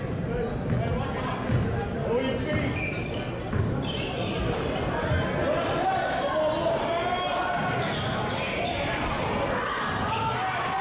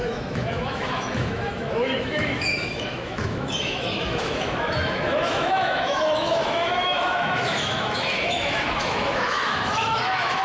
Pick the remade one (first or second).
second